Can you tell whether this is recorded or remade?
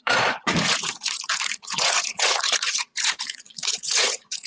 remade